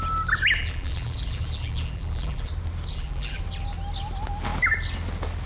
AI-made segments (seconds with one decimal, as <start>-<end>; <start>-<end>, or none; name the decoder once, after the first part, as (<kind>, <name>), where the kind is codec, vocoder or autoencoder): 0.6-2.5 (vocoder, BigVGAN v2); 2.9-3.4